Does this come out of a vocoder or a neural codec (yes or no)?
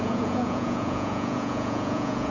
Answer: yes